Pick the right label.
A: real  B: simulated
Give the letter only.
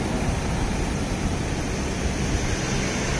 A